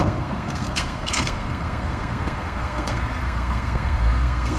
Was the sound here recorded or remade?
remade